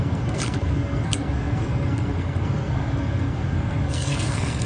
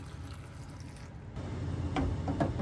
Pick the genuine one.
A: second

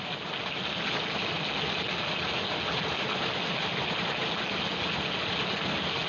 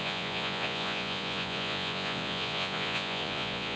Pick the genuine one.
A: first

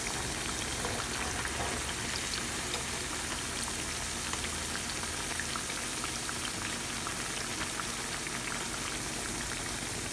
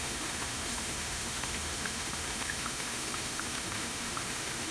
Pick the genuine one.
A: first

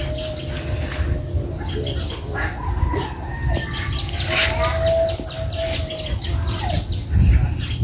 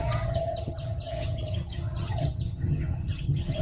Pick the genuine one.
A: first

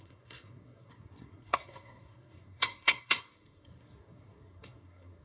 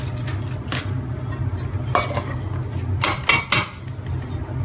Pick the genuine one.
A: second